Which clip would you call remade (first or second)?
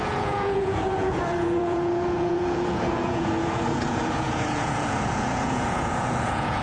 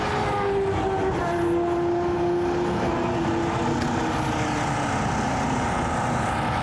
first